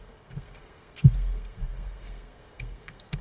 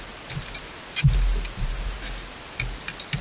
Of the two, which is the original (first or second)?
second